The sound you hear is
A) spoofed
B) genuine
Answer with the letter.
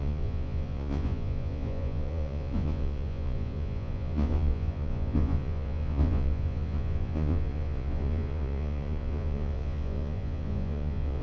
A